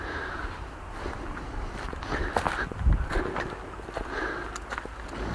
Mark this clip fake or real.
real